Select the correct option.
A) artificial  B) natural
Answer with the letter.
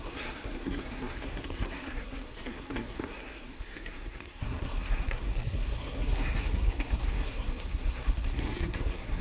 A